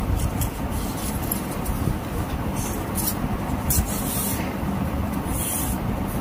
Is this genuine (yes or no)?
yes